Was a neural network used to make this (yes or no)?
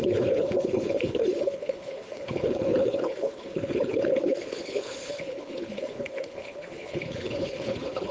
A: yes